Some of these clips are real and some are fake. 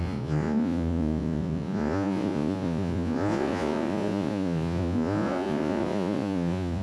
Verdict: fake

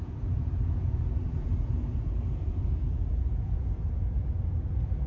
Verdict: fake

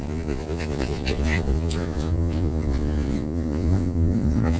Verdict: fake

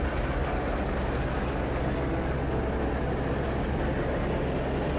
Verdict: real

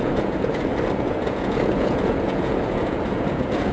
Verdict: fake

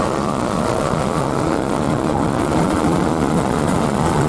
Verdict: fake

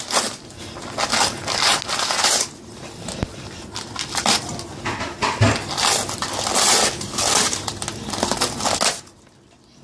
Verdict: real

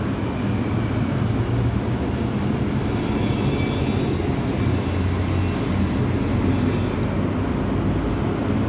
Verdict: real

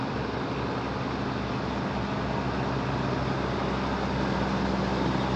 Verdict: real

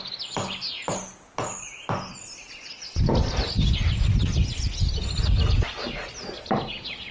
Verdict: real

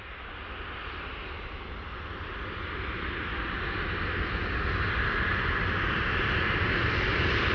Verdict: real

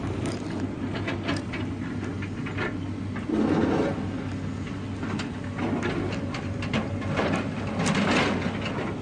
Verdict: real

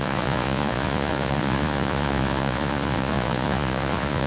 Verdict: fake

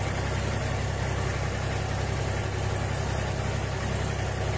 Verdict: real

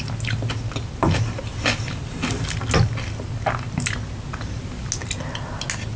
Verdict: real